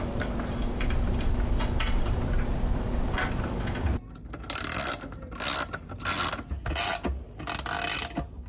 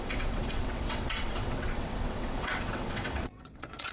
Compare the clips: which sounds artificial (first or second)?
second